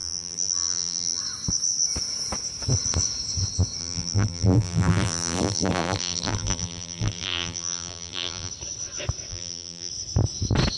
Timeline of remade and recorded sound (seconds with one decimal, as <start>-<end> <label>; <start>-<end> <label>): 0.0-1.2 remade; 1.2-3.8 recorded; 3.8-8.5 remade; 8.5-9.3 recorded; 9.3-9.9 remade; 9.9-10.8 recorded